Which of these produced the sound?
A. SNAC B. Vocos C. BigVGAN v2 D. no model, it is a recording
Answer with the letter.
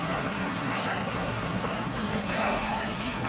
A